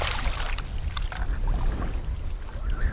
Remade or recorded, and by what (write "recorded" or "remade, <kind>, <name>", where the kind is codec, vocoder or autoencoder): recorded